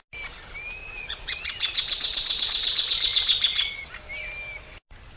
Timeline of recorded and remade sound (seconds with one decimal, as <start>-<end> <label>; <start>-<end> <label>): 0.0-0.8 recorded; 0.8-3.9 remade; 3.9-5.2 recorded